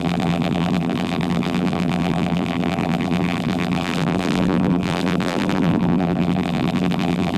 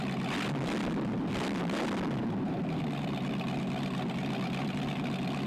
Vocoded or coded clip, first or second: first